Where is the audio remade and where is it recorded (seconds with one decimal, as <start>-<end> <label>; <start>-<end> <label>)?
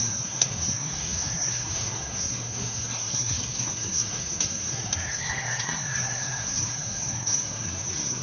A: 0.0-8.2 remade